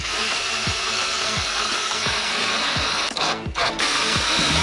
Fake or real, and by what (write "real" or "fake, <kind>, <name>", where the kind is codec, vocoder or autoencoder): fake, codec, SNAC